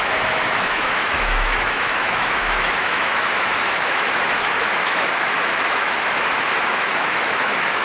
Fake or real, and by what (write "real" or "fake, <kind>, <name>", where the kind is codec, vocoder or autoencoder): fake, autoencoder, DAC-VAE